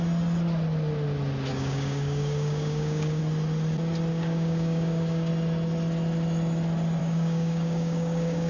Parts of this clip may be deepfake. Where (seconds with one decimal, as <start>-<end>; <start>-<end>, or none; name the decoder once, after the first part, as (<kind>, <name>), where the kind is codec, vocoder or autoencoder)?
1.5-3.2 (codec, DAC); 4.1-5.3; 7.0-8.5